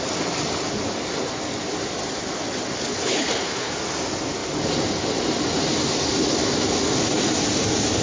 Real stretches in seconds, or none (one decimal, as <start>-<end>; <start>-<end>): 0.0-2.9; 3.7-8.0